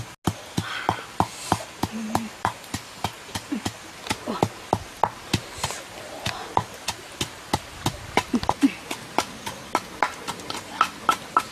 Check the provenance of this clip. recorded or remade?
recorded